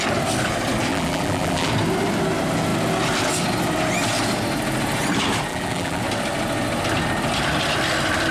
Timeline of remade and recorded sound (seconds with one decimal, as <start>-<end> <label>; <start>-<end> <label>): 0.0-0.9 recorded; 0.9-1.7 remade; 1.7-5.5 recorded; 5.5-6.0 remade; 6.0-8.3 recorded